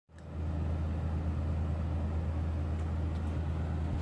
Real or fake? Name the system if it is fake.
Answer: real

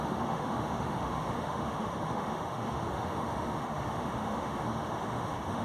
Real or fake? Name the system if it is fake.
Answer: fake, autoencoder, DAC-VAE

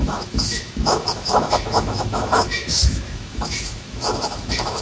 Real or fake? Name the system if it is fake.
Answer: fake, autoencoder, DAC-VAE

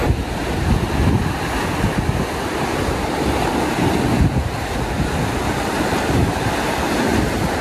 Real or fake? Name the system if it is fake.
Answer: real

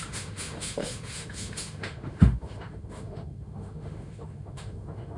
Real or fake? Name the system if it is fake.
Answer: fake, autoencoder, DAC-VAE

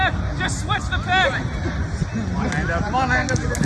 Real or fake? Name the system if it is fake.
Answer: real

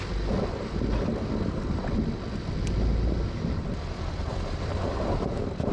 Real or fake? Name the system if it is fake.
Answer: real